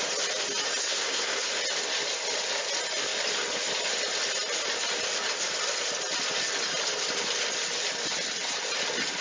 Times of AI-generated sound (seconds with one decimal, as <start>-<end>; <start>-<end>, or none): 0.8-1.5